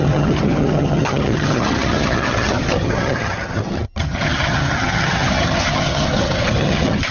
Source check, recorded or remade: remade